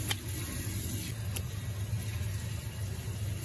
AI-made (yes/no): no